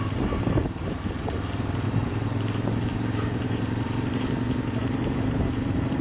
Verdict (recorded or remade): remade